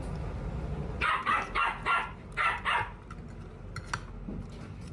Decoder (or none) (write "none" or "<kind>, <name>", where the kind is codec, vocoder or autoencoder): none